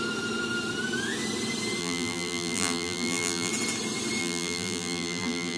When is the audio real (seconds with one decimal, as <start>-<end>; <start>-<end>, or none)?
0.0-1.8; 3.5-4.2